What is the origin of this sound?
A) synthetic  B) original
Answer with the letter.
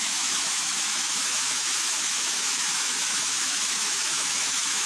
A